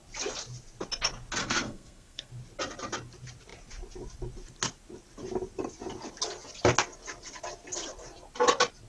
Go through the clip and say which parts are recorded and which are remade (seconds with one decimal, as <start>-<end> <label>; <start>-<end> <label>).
0.0-1.4 recorded; 1.4-2.3 remade; 2.3-8.9 recorded